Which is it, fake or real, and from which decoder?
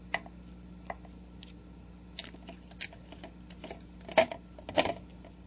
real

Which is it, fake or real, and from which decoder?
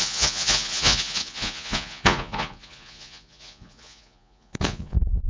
fake, vocoder, Vocos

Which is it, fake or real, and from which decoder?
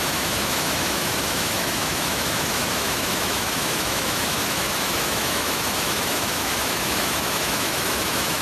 fake, autoencoder, DAC-VAE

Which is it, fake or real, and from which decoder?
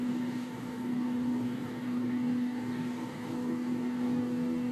fake, codec, DAC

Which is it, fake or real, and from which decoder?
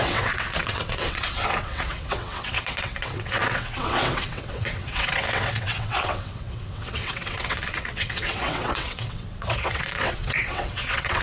fake, vocoder, WaveNeXt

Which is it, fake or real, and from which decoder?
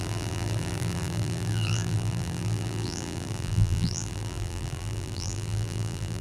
fake, vocoder, BigVGAN v2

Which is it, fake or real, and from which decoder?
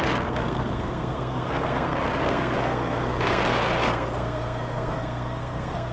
fake, codec, SNAC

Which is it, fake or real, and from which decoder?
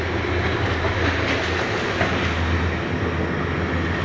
real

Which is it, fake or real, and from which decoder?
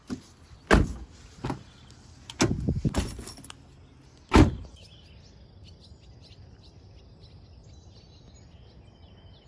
real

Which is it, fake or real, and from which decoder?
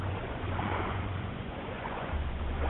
fake, vocoder, Vocos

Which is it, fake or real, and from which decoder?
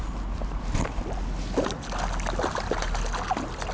real